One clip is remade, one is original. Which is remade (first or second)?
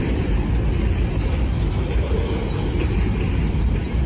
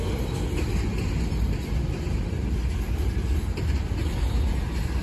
first